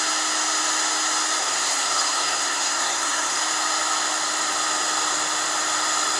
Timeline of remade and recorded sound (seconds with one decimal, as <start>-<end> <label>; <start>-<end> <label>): 0.0-1.4 recorded; 1.4-3.4 remade; 3.4-6.2 recorded